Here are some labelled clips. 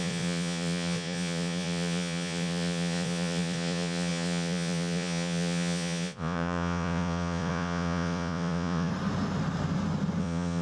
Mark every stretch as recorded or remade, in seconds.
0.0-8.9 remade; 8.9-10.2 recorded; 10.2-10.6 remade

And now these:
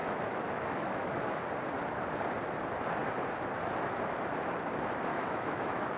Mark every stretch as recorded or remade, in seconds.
0.0-1.4 remade; 1.4-5.1 recorded; 5.1-6.0 remade

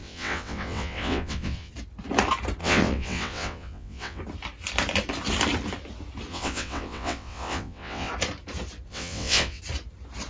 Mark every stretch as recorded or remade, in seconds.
0.0-1.7 remade; 1.7-2.6 recorded; 2.6-4.2 remade; 4.2-6.3 recorded; 6.3-8.1 remade; 8.1-8.9 recorded; 8.9-9.6 remade; 9.6-10.3 recorded

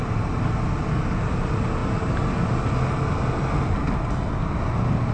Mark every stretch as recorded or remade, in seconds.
0.0-5.1 recorded

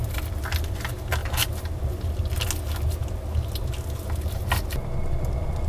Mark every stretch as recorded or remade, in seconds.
0.0-1.2 recorded; 1.2-1.8 remade; 1.8-5.7 recorded

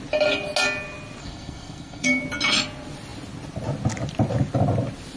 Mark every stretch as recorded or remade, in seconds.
0.0-1.2 recorded; 1.2-2.2 remade; 2.2-5.2 recorded

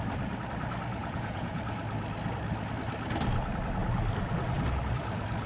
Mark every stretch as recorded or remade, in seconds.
0.0-1.0 recorded; 1.0-1.6 remade; 1.6-5.5 recorded